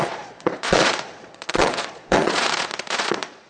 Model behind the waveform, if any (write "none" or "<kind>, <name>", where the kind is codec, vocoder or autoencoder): vocoder, Vocos